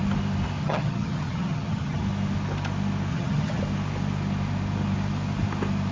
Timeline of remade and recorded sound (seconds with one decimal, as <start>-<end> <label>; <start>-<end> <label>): 0.0-0.6 recorded; 0.6-2.0 remade; 2.0-3.1 recorded; 3.1-3.6 remade; 3.6-5.9 recorded